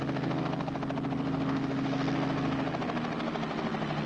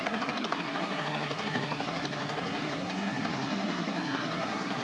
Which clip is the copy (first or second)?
second